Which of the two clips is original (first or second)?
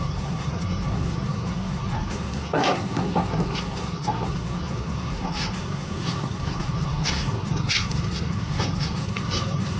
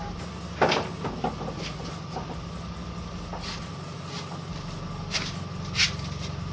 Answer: second